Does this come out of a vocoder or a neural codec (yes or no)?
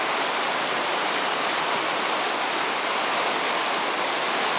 no